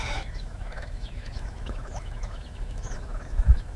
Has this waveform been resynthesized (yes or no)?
yes